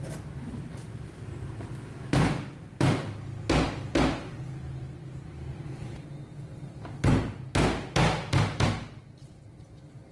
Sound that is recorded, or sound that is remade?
recorded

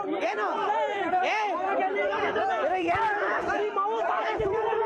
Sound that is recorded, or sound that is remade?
remade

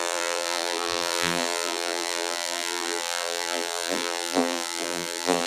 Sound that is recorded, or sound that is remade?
remade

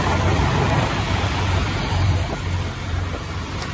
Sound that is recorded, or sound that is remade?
remade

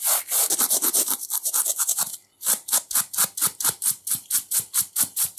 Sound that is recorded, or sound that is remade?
remade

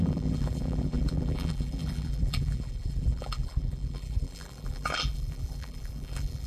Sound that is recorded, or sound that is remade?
remade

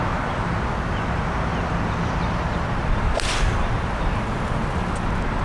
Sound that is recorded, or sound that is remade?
recorded